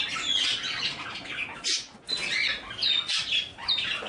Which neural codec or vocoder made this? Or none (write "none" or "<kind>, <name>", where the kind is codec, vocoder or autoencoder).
none